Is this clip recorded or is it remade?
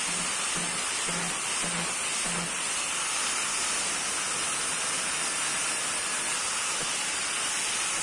recorded